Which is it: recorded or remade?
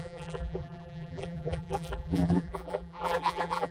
remade